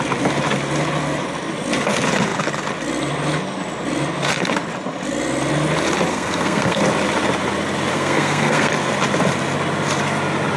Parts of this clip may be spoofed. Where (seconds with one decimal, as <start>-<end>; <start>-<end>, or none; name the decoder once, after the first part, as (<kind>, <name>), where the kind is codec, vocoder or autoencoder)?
6.1-6.8 (codec, SNAC); 7.9-8.7